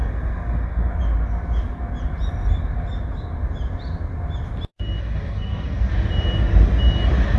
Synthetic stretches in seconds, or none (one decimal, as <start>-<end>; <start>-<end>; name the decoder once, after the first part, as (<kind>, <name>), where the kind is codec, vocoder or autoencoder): 0.0-0.9 (codec, SNAC); 5.0-5.9